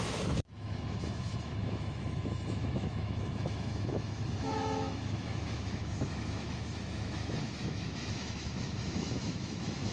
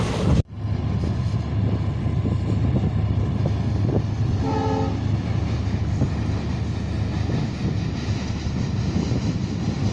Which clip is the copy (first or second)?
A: first